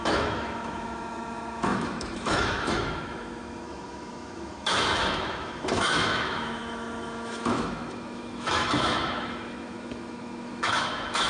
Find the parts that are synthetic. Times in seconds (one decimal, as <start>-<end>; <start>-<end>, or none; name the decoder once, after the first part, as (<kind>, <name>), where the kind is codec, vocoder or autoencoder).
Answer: 0.0-11.3 (autoencoder, DAC-VAE)